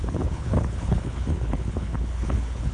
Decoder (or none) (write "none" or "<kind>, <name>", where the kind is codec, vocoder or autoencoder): codec, HILCodec